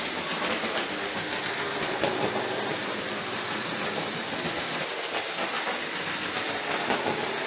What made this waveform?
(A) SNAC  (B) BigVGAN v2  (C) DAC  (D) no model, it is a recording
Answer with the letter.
D